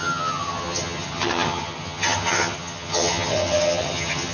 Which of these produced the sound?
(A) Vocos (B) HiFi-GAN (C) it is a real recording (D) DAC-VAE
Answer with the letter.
B